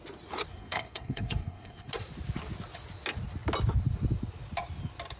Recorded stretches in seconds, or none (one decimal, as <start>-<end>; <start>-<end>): 0.0-0.5; 1.9-5.2